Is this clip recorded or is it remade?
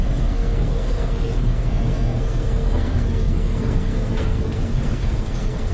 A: remade